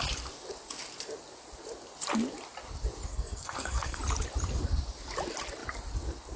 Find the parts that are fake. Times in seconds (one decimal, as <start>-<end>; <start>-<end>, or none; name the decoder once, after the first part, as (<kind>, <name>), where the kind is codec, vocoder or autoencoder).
3.1-4.0 (codec, SNAC)